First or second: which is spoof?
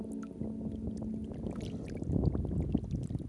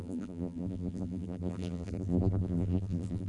second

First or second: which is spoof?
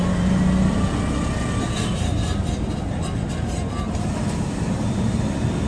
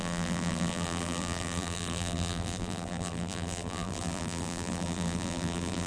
second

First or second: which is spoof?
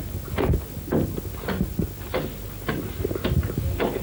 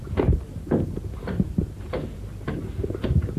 second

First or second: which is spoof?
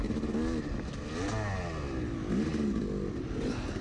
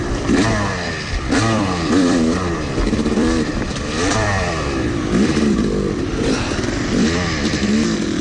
second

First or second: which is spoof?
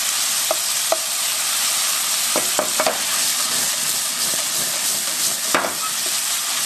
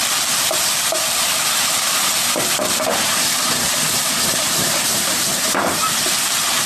second